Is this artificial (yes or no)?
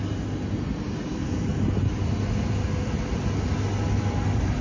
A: no